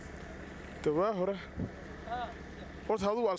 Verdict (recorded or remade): recorded